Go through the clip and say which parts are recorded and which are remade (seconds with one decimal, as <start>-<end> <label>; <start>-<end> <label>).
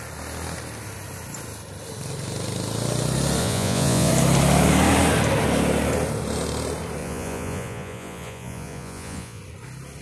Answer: 0.0-3.4 recorded; 3.4-4.1 remade; 4.1-7.0 recorded; 7.0-9.4 remade; 9.4-10.0 recorded